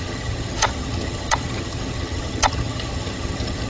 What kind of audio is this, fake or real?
fake